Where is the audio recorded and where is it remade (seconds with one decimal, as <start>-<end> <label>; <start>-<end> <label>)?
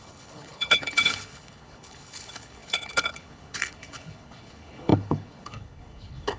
0.0-6.4 remade